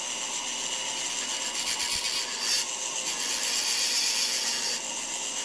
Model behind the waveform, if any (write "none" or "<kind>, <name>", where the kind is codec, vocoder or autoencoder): none